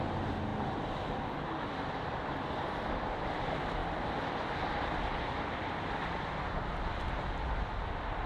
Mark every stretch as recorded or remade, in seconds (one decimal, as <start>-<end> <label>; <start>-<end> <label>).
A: 0.0-8.3 recorded